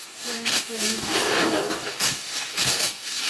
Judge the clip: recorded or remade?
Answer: remade